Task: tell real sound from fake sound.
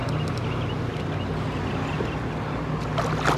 real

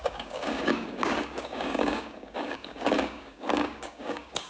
fake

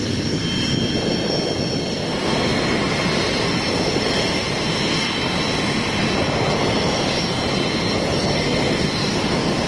real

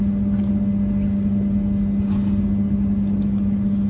real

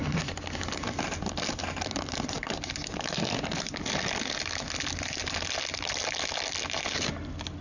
real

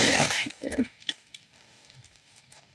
fake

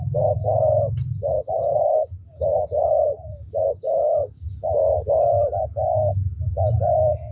fake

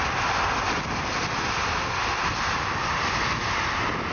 real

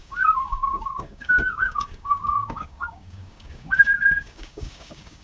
fake